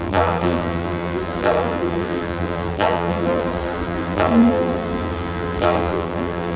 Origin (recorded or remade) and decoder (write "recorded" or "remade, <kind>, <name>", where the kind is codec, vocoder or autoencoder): remade, vocoder, BigVGAN v2